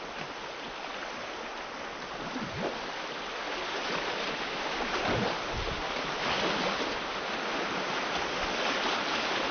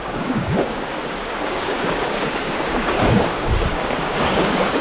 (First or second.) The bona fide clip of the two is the first